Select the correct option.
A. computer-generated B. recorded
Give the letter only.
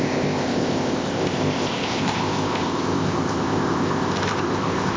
A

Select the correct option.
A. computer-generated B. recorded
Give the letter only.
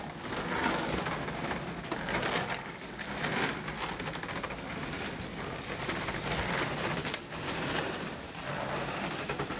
B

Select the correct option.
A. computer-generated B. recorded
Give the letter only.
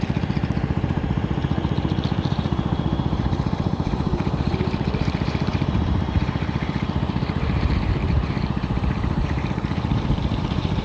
A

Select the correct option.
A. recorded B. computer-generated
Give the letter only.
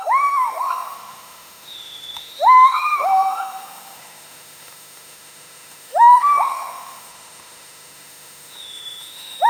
B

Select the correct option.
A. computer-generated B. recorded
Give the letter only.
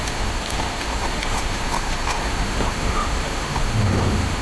A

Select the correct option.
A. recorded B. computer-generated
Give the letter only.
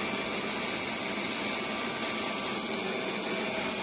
A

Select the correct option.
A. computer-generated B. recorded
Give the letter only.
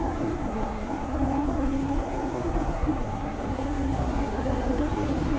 A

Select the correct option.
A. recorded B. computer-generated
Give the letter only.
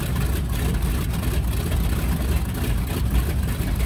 A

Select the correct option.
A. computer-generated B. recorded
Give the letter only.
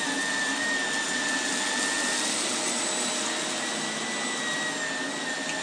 B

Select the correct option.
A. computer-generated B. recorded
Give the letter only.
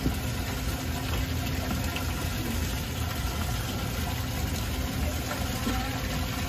B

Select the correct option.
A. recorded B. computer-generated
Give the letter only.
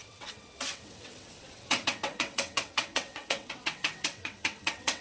B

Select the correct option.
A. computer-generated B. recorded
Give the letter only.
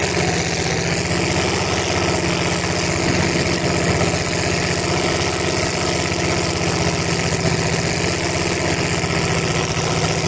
B